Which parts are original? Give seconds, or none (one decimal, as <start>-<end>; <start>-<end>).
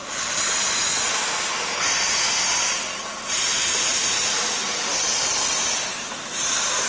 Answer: 0.0-4.6; 6.5-6.9